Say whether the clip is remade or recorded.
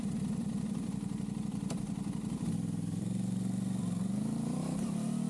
remade